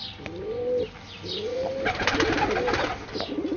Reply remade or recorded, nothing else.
recorded